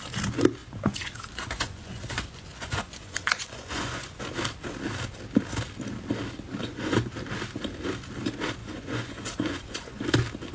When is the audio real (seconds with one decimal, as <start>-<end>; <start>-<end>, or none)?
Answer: 0.0-0.6; 4.2-6.6; 7.1-8.6; 10.0-10.5